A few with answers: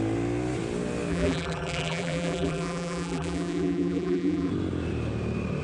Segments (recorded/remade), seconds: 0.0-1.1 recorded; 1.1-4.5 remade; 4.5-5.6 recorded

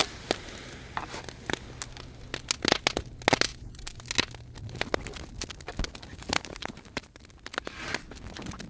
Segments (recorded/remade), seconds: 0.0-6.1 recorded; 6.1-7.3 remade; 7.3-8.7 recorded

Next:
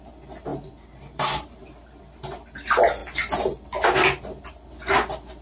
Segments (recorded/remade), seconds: 0.0-0.5 recorded; 0.5-2.0 remade; 2.0-5.4 recorded

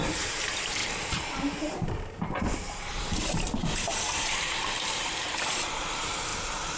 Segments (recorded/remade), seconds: 0.0-6.8 remade

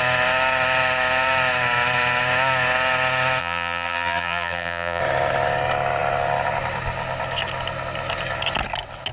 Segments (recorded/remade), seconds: 0.0-3.4 recorded; 3.4-5.0 remade; 5.0-9.1 recorded

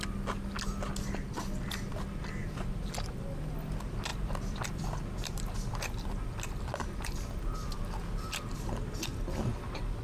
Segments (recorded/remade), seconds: 0.0-4.1 recorded; 4.1-5.5 remade; 5.5-10.0 recorded